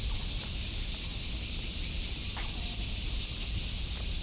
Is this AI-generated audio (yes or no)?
no